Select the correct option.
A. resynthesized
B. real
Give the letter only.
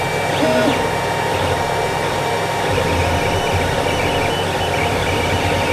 B